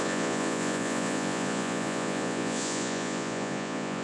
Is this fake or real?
fake